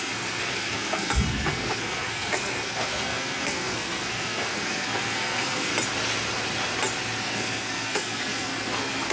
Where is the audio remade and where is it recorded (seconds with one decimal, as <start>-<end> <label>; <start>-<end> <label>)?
0.0-5.7 remade; 5.7-7.2 recorded; 7.2-9.1 remade